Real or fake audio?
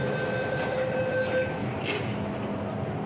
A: real